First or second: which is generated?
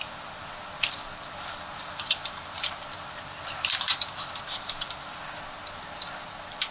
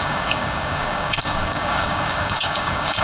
second